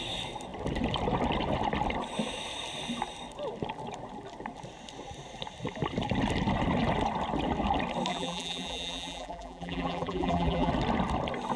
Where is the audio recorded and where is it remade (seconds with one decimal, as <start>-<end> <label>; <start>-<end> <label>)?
0.0-8.1 recorded; 8.1-10.7 remade; 10.7-11.6 recorded

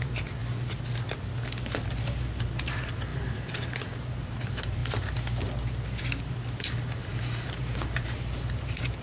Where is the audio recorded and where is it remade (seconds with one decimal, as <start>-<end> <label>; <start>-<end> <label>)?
0.0-0.4 remade; 0.4-2.1 recorded; 2.1-4.8 remade; 4.8-6.2 recorded; 6.2-9.0 remade

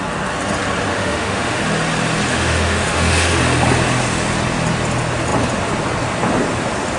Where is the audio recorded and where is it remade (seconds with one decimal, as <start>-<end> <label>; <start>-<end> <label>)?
0.0-0.9 recorded; 0.9-1.6 remade; 1.6-2.3 recorded; 2.3-3.4 remade; 3.4-7.0 recorded

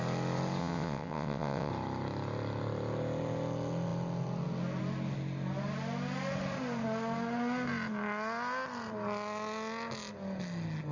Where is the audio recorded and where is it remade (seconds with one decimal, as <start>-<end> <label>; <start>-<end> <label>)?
0.0-0.6 recorded; 0.6-1.7 remade; 1.7-10.9 recorded

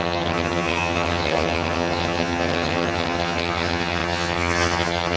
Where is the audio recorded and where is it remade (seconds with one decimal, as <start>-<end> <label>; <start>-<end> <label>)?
0.0-5.2 remade

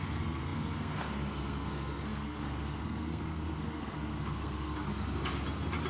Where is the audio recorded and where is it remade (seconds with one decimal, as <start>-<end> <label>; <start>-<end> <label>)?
0.0-4.9 remade; 4.9-5.9 recorded